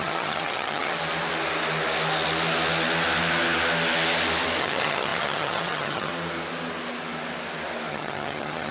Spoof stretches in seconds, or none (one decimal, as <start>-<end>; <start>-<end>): 0.0-0.9; 4.6-6.1; 7.9-8.7